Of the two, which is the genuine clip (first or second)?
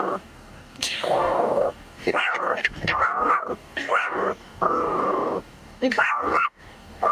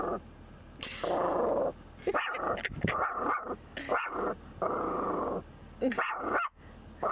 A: second